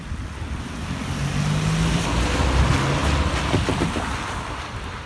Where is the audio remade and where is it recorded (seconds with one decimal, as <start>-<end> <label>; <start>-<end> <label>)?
0.0-5.1 recorded